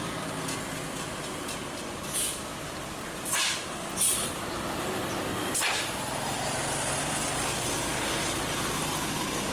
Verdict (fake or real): real